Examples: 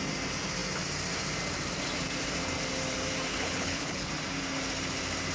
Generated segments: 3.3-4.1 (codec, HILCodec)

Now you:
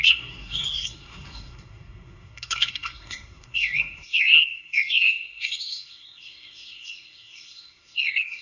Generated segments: 0.0-8.4 (codec, SNAC)

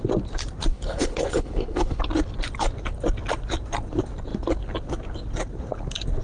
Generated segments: 0.7-2.0 (codec, HILCodec)

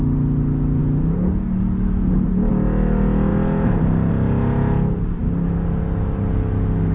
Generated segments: none

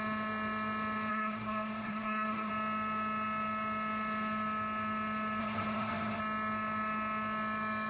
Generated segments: 1.1-2.5 (codec, SNAC); 5.4-6.2

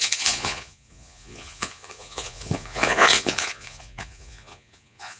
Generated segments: 0.0-5.2 (vocoder, Vocos)

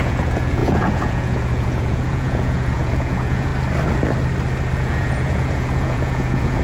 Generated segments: 0.0-3.5 (vocoder, Vocos); 4.8-6.6